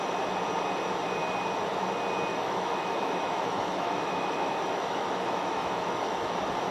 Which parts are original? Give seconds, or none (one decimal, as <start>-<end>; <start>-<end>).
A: 0.0-2.3; 6.3-6.7